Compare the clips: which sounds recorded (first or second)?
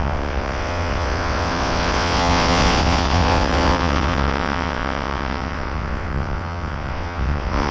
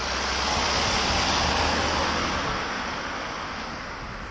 second